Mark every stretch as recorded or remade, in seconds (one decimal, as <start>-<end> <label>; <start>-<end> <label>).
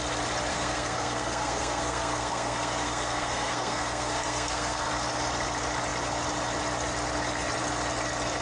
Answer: 0.0-0.5 recorded; 0.5-4.9 remade; 4.9-8.4 recorded